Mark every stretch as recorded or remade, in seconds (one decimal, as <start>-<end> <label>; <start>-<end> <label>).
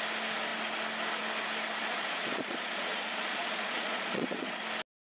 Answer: 0.0-1.8 recorded; 1.8-4.6 remade; 4.6-5.1 recorded